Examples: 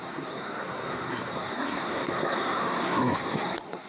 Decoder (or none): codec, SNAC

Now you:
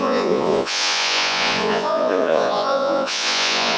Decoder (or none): vocoder, Vocos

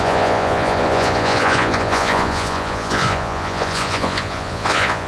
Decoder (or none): vocoder, Vocos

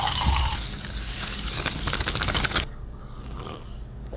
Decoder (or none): codec, DAC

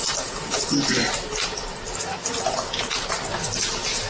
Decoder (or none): none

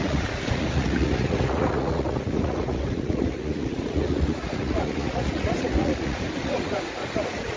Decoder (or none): vocoder, Vocos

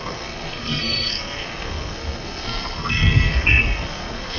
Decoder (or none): codec, SNAC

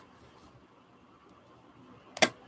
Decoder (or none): none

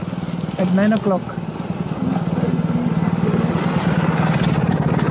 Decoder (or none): none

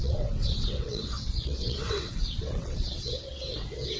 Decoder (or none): vocoder, WaveNeXt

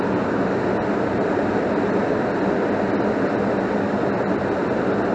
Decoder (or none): none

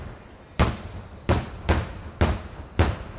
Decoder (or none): vocoder, BigVGAN v2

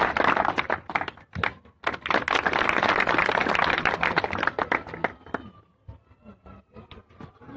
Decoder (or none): none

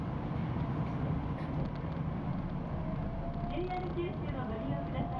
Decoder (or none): none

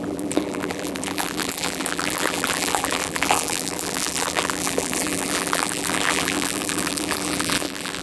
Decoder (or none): vocoder, BigVGAN v2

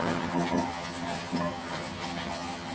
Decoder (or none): vocoder, HiFi-GAN